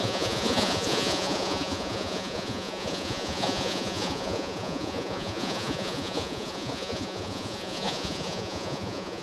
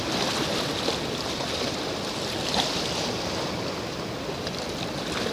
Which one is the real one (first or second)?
second